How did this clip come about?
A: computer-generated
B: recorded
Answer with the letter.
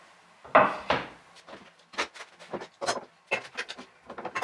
B